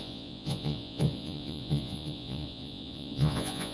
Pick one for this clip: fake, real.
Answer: fake